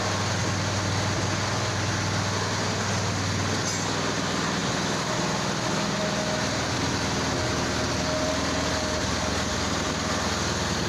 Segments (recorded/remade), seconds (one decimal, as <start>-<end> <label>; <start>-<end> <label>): 0.0-10.9 recorded